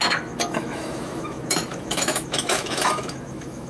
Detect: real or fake fake